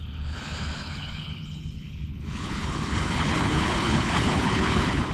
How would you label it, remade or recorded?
remade